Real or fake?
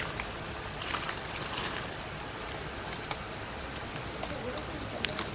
real